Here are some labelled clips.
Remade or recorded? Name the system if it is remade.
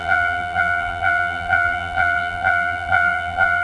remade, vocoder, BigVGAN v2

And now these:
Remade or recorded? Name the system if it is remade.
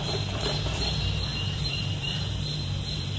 remade, vocoder, BigVGAN v2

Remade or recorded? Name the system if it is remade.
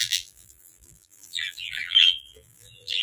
remade, vocoder, BigVGAN v2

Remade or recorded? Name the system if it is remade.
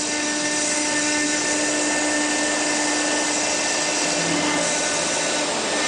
recorded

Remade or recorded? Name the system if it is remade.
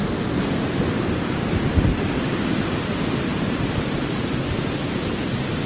remade, vocoder, BigVGAN v2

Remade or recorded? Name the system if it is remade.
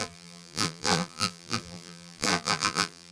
remade, vocoder, BigVGAN v2